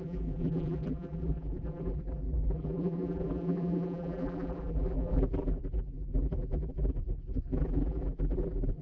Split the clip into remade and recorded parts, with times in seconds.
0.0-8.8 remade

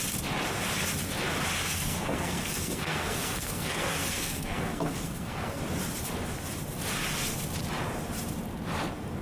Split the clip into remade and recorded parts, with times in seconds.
0.0-1.6 recorded; 1.6-5.6 remade; 5.6-9.2 recorded

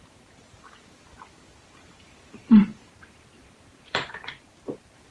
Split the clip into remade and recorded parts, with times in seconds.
0.0-5.1 remade

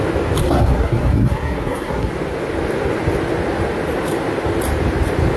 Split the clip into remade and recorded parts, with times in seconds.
0.0-0.4 recorded; 0.4-2.1 remade; 2.1-5.4 recorded

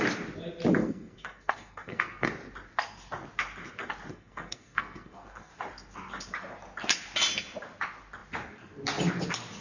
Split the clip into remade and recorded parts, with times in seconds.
0.0-0.8 recorded; 0.8-2.3 remade; 2.3-4.1 recorded; 4.1-5.5 remade; 5.5-9.6 recorded